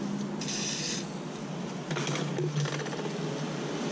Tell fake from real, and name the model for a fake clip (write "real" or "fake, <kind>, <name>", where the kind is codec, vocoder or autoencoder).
real